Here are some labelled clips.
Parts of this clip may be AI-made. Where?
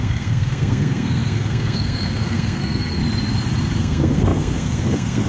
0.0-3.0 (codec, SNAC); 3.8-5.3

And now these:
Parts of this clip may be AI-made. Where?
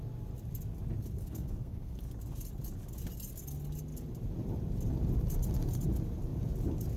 1.2-2.0 (codec, SNAC)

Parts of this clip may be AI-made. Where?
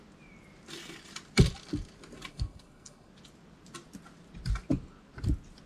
2.3-3.1 (codec, SNAC)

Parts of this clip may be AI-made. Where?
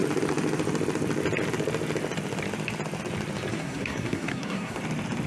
3.5-4.8 (codec, SNAC)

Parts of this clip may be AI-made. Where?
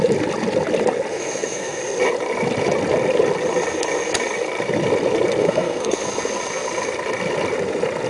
1.1-1.8 (codec, SNAC); 5.4-6.0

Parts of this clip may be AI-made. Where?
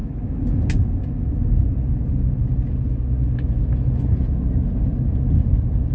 none